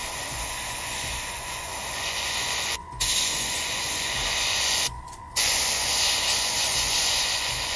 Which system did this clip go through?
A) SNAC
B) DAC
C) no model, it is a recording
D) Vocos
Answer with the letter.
D